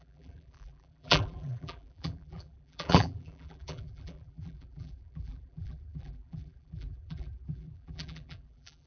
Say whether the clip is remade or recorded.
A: remade